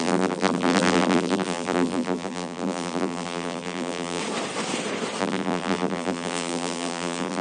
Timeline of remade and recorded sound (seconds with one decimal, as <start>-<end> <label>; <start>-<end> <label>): 0.0-4.2 remade; 4.2-5.2 recorded; 5.2-7.4 remade